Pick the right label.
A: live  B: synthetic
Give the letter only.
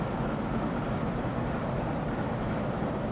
B